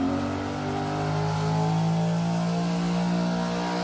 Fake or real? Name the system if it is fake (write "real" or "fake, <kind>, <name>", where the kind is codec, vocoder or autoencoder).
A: real